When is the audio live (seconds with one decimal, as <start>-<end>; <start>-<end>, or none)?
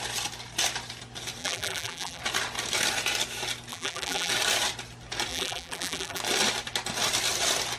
0.0-1.4; 2.2-3.7; 4.3-5.3; 6.2-7.8